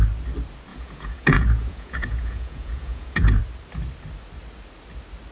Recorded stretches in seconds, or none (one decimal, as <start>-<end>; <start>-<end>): 0.0-0.7; 3.4-5.3